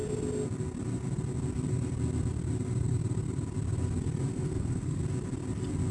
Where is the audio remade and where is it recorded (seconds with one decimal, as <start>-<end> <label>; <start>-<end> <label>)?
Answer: 0.0-4.3 recorded; 4.3-5.0 remade; 5.0-5.9 recorded